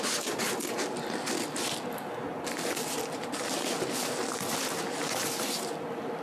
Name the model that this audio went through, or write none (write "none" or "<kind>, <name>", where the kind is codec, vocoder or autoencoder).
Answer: none